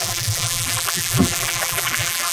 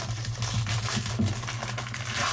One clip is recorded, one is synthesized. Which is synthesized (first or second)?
first